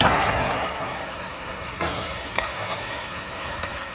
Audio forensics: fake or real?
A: fake